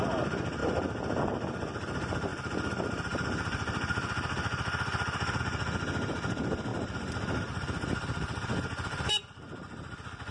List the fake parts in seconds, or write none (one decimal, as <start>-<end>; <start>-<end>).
2.3-5.4; 6.7-9.1